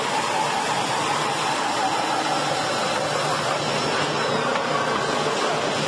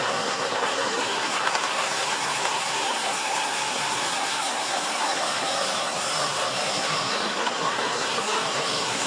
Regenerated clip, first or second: second